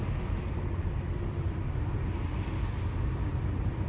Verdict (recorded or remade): recorded